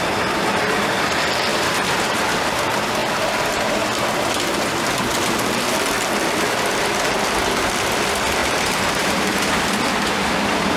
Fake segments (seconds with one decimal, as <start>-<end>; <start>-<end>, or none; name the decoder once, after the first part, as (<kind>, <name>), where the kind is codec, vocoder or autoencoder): 1.5-2.6 (vocoder, BigVGAN v2); 8.4-9.6